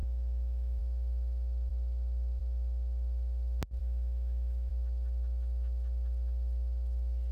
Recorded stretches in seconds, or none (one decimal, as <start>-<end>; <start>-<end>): 0.8-3.8; 4.7-7.3